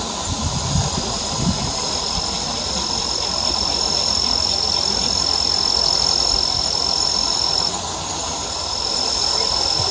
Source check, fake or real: real